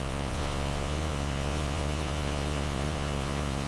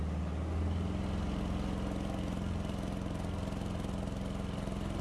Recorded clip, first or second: second